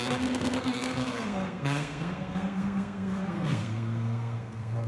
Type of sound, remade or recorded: remade